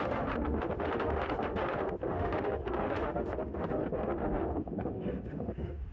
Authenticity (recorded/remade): remade